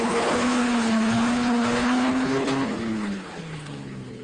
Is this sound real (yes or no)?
no